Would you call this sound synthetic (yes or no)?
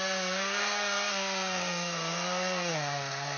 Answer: yes